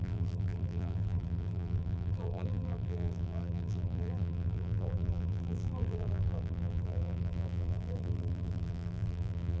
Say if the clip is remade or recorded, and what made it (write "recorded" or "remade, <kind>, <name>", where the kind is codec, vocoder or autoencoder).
remade, vocoder, BigVGAN v2